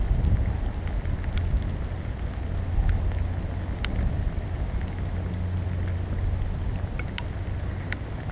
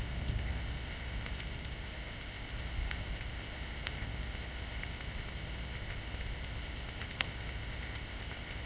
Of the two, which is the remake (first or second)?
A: second